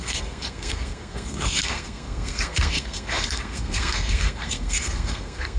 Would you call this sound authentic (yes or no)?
no